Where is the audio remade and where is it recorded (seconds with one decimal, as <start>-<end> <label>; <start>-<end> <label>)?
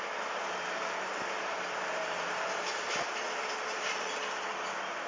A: 0.0-1.1 recorded; 1.1-4.1 remade; 4.1-5.1 recorded